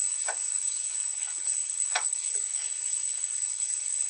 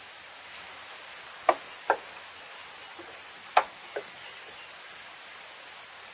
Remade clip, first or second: first